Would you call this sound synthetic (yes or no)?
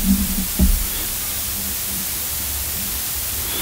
yes